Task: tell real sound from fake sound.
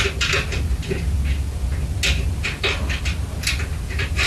real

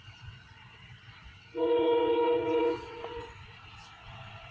fake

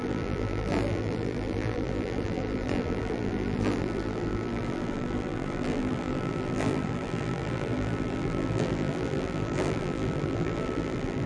fake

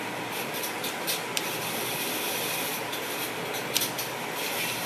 real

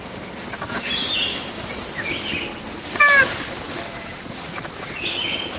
real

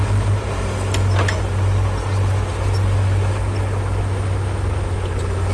real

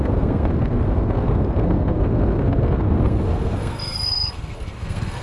fake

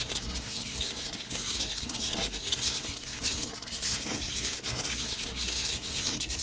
fake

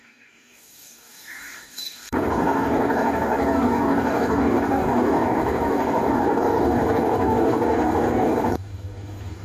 fake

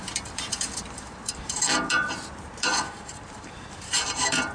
fake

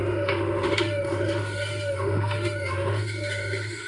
fake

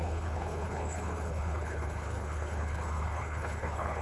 fake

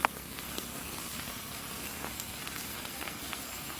fake